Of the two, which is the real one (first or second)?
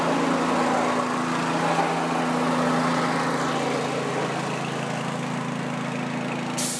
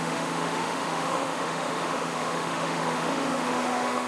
first